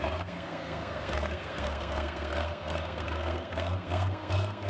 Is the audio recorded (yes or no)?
no